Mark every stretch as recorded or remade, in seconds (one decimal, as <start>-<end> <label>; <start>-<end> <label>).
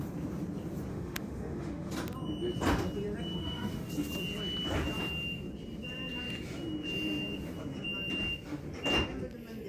0.0-0.9 recorded; 0.9-1.9 remade; 1.9-3.4 recorded; 3.4-3.9 remade; 3.9-9.7 recorded